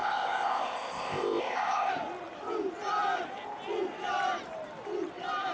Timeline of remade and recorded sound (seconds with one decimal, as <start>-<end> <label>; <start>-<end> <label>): 0.0-1.9 remade; 1.9-5.5 recorded